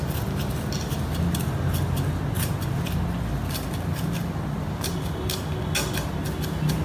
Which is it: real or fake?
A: real